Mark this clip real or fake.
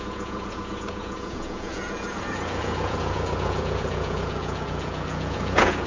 fake